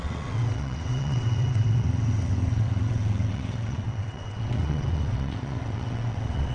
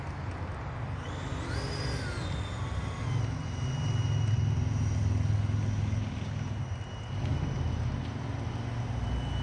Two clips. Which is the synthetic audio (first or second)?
first